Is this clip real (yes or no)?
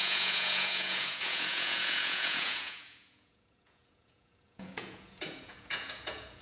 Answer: no